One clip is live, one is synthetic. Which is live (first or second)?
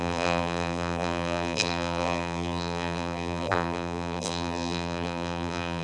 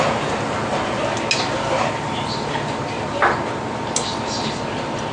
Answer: second